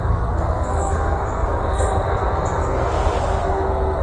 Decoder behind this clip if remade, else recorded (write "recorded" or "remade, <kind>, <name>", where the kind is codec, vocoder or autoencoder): remade, codec, SNAC